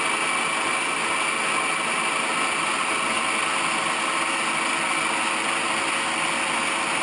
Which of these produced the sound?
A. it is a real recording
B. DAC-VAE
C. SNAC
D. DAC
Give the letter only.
A